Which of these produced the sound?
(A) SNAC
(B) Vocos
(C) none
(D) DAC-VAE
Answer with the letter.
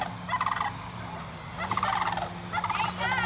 C